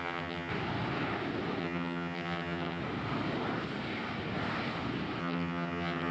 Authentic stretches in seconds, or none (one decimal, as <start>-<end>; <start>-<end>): 0.5-1.6; 2.8-5.2